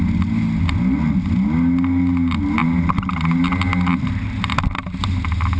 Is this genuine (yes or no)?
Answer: yes